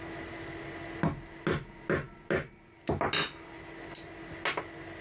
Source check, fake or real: real